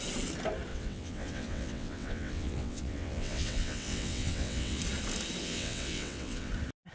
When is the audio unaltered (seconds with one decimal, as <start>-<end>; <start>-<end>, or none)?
0.0-0.7; 4.8-5.4; 6.5-6.9